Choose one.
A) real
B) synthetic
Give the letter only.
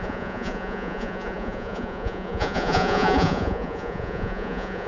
B